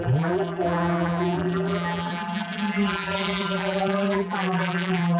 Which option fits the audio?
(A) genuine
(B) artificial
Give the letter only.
B